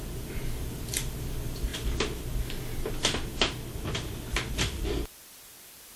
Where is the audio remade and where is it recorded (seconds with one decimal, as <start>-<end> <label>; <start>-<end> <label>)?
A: 0.0-1.7 remade; 1.7-4.5 recorded; 4.5-6.0 remade